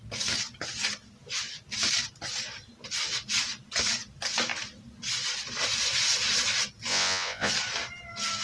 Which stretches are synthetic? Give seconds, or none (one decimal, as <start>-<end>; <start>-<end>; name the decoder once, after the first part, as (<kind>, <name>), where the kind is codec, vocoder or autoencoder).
6.9-7.5 (vocoder, Vocos)

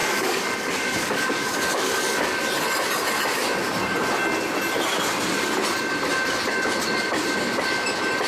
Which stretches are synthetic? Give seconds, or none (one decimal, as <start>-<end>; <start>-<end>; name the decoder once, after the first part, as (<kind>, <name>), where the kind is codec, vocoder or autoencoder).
0.0-2.4 (codec, DAC)

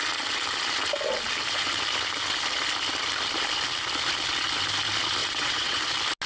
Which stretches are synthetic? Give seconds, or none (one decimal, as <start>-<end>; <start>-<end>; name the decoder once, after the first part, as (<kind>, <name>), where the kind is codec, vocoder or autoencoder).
5.2-5.8 (vocoder, WaveNeXt)